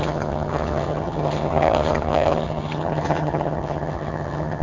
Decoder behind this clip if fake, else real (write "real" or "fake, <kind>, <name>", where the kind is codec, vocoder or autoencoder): fake, vocoder, HiFi-GAN